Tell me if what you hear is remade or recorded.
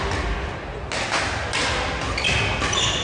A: recorded